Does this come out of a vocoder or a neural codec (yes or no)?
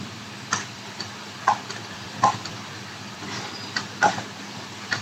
yes